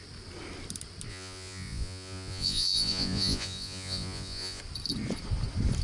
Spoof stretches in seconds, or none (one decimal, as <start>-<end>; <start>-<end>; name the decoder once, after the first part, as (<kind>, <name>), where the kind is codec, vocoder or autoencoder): 1.1-4.6 (vocoder, Vocos)